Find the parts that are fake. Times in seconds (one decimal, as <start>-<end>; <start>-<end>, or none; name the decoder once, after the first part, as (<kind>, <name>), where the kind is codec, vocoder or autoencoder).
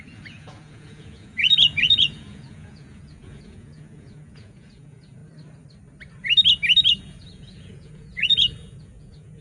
0.0-5.2 (vocoder, Vocos); 7.0-9.4